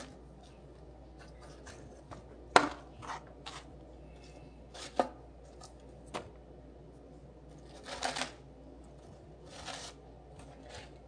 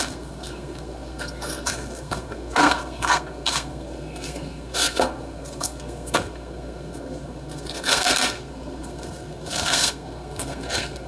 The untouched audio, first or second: first